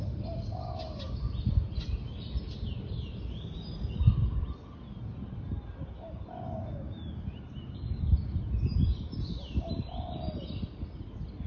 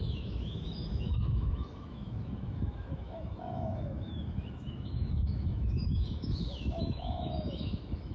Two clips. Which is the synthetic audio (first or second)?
second